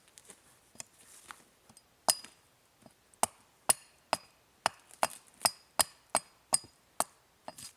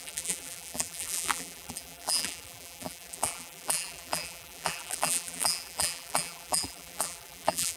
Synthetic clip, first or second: second